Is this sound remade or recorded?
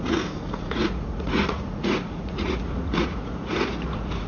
remade